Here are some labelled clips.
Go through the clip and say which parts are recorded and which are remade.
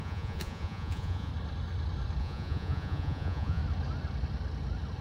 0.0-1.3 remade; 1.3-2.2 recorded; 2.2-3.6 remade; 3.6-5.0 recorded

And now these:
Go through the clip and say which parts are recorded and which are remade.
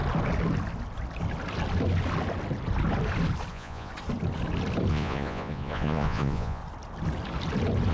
0.0-3.5 recorded; 3.5-3.9 remade; 3.9-4.9 recorded; 4.9-6.6 remade; 6.6-7.9 recorded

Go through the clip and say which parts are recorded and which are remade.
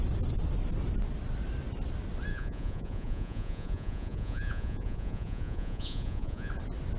0.0-2.3 recorded; 2.3-6.5 remade; 6.5-7.0 recorded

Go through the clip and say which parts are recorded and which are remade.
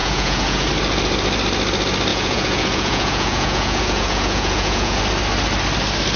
0.0-0.7 remade; 0.7-2.1 recorded; 2.1-5.0 remade; 5.0-6.2 recorded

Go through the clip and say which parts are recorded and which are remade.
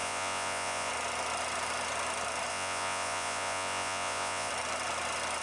0.0-0.9 remade; 0.9-2.5 recorded; 2.5-4.5 remade; 4.5-5.4 recorded